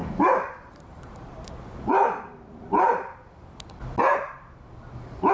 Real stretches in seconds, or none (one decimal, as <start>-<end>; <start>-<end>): 1.5-1.9; 3.3-4.1